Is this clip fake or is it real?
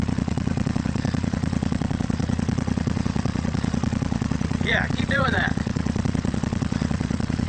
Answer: fake